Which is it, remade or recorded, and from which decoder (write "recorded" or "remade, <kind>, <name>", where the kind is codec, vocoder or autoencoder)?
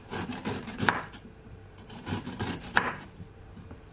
remade, vocoder, BigVGAN v2